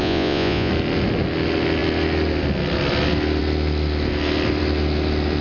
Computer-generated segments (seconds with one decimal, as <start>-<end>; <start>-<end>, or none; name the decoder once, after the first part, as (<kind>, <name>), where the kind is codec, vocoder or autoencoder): 0.0-0.7 (vocoder, Vocos)